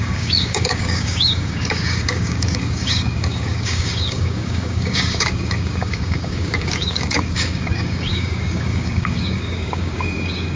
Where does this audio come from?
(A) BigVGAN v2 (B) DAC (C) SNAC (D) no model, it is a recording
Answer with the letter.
B